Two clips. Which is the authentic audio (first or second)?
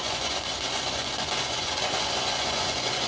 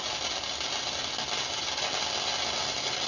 second